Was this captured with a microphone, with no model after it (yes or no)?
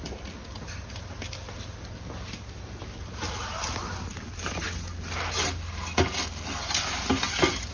yes